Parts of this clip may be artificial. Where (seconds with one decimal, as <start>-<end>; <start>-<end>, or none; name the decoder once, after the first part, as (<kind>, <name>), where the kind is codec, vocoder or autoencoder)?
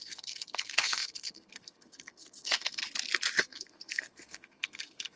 0.0-2.8 (codec, SNAC); 3.4-5.2